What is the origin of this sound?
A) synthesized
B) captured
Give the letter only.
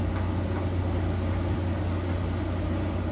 B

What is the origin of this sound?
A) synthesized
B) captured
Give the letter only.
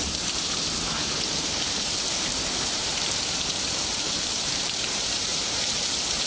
A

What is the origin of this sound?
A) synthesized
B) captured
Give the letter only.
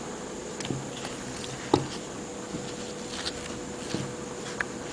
B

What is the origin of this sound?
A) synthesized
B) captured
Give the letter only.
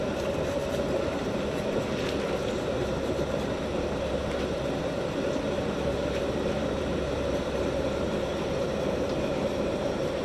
A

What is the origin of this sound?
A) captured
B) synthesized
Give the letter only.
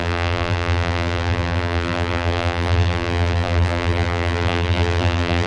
B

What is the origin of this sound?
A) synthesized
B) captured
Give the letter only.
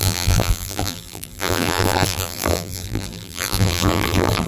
A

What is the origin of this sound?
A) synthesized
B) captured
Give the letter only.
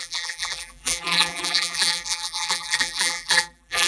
A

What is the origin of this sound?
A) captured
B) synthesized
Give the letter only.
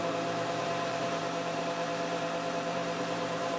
B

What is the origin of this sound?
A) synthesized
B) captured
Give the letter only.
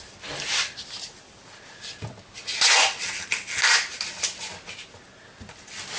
B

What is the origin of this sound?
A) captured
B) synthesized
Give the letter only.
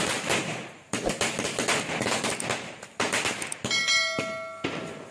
A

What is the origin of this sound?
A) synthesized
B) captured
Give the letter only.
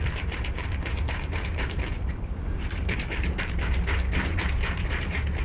A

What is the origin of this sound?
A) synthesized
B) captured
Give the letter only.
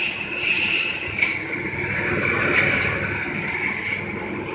B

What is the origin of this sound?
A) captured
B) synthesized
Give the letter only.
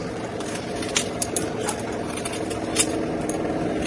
A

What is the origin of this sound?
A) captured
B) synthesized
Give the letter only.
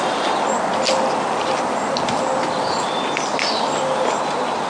A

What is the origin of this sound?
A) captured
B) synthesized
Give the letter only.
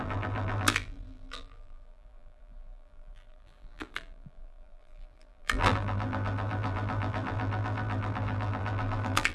B